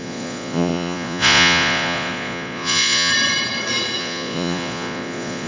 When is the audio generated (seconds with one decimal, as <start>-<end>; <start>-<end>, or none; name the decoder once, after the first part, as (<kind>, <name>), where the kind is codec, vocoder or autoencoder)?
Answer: 0.0-3.1 (vocoder, Vocos); 4.0-5.5